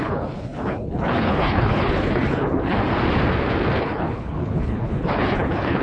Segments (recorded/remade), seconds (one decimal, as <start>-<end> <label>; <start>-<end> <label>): 0.0-2.8 remade; 2.8-3.8 recorded; 3.8-5.8 remade